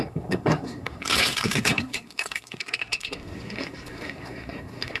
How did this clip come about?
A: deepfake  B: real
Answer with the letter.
A